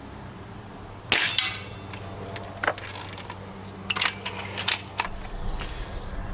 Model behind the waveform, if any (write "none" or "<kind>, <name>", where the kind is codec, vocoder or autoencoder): none